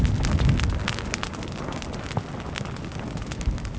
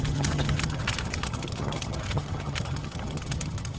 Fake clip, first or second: second